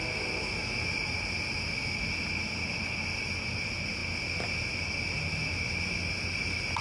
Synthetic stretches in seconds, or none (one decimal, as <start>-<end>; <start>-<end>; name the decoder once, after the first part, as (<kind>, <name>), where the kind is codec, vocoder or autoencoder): none